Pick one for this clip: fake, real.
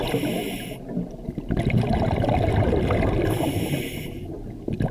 real